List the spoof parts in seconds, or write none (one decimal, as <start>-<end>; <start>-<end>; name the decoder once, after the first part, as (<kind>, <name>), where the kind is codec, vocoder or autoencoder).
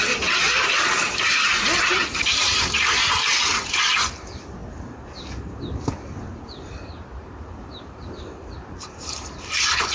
0.0-4.6 (vocoder, BigVGAN v2); 6.4-9.9